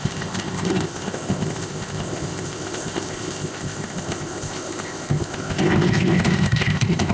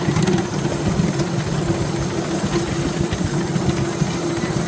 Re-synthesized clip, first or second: first